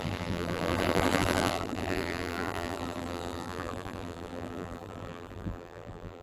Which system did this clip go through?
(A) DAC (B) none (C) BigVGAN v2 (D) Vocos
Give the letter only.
C